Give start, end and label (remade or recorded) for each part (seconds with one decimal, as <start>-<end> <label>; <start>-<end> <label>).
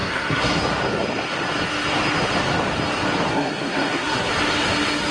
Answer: 0.0-0.6 remade; 0.6-3.3 recorded; 3.3-4.3 remade; 4.3-5.1 recorded